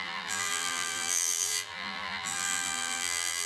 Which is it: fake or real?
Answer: fake